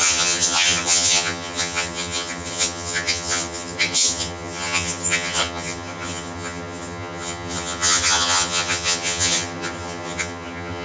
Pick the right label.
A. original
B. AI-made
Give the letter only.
B